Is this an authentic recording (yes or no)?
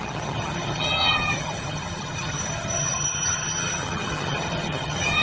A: no